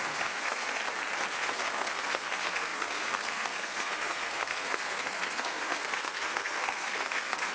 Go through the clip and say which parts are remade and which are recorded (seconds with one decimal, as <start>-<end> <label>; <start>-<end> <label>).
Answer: 0.0-0.8 remade; 0.8-1.3 recorded; 1.3-7.5 remade